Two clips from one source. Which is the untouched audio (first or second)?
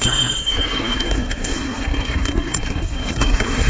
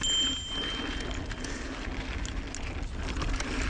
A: second